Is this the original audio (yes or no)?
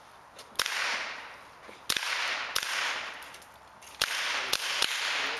yes